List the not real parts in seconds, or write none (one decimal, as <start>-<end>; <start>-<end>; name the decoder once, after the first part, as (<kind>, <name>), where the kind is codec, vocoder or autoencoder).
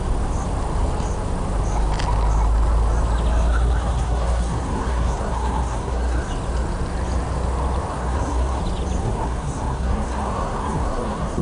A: 3.5-6.2 (codec, SNAC); 7.9-8.6; 9.0-11.4